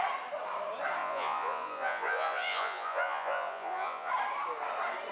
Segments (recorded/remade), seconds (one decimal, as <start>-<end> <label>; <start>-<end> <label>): 0.0-1.0 recorded; 1.0-4.1 remade; 4.1-5.1 recorded